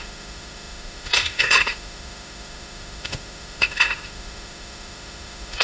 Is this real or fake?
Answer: fake